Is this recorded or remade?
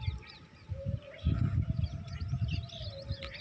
recorded